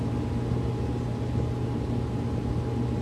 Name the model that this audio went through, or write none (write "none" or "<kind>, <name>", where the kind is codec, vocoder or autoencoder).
none